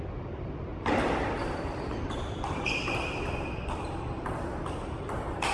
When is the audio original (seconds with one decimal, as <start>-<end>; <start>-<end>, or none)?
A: 0.0-0.7; 4.0-5.5